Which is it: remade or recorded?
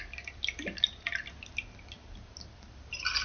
recorded